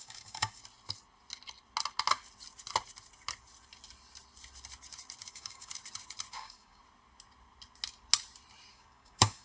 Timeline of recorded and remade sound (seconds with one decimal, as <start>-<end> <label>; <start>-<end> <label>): 0.0-0.6 remade; 0.6-5.3 recorded; 5.3-5.7 remade; 5.7-6.3 recorded; 6.3-6.8 remade; 6.8-8.7 recorded; 8.7-9.4 remade

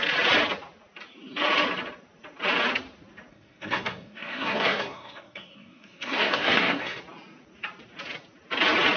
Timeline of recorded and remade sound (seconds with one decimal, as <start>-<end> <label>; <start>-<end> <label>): 0.0-3.3 recorded; 3.3-7.0 remade; 7.0-9.0 recorded